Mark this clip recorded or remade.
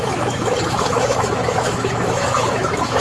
remade